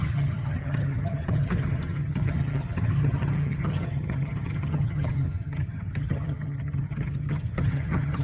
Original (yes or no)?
no